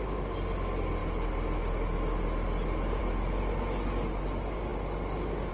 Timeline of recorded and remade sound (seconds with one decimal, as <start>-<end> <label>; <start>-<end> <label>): 0.0-5.5 recorded